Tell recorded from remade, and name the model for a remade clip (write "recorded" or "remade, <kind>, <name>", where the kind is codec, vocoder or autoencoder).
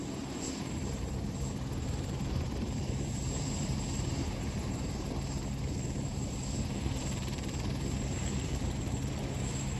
remade, vocoder, BigVGAN v2